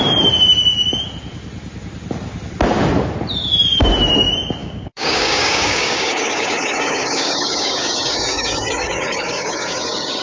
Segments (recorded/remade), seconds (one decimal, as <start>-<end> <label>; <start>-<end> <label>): 0.0-4.6 recorded; 4.6-10.2 remade